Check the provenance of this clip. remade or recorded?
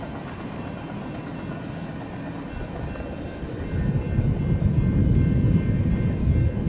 recorded